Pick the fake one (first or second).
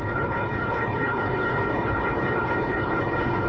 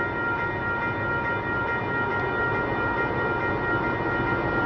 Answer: first